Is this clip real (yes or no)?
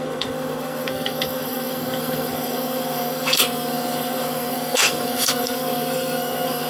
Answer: no